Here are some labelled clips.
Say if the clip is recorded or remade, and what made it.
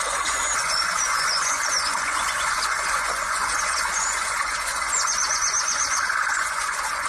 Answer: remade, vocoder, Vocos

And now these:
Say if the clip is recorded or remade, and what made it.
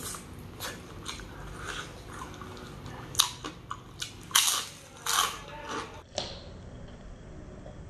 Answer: recorded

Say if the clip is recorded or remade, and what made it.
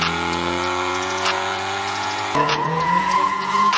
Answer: remade, vocoder, Vocos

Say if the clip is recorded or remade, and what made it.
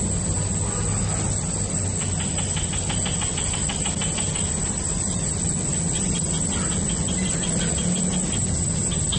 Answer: recorded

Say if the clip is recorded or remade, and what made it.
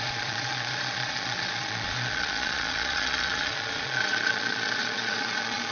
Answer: remade, vocoder, Vocos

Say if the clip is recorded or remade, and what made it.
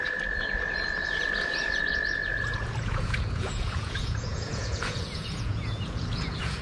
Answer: remade, vocoder, Vocos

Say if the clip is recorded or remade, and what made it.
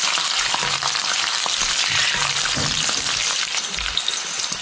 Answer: recorded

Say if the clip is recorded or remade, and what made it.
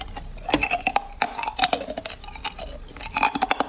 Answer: recorded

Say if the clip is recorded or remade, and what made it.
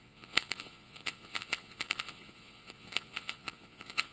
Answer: remade, vocoder, Vocos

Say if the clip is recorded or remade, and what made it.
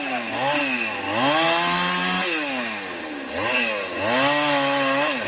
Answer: recorded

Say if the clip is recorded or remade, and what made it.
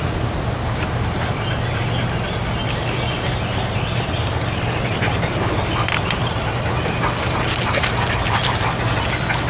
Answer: recorded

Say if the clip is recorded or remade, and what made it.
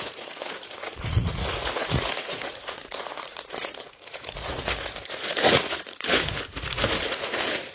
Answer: remade, vocoder, Vocos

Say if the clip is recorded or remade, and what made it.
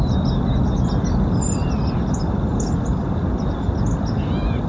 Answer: recorded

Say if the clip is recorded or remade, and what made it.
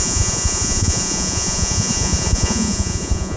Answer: remade, vocoder, Vocos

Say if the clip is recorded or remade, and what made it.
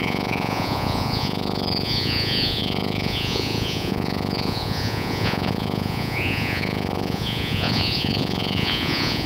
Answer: remade, vocoder, Vocos